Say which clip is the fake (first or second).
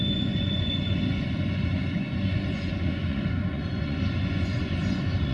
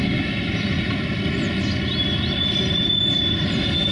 first